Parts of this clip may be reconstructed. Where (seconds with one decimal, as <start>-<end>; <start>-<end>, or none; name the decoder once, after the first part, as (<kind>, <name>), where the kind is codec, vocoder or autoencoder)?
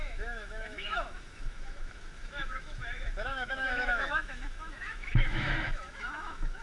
0.0-6.6 (autoencoder, DAC-VAE)